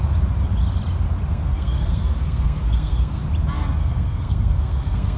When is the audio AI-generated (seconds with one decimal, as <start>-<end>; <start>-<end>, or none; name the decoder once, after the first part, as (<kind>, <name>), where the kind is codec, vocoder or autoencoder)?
1.3-3.2 (codec, SNAC); 3.8-5.2